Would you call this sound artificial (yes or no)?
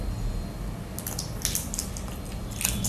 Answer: no